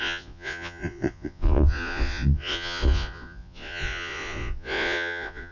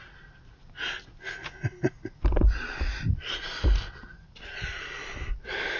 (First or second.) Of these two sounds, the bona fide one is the second